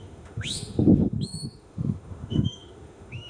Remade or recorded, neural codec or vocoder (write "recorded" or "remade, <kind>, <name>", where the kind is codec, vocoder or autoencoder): remade, autoencoder, DAC-VAE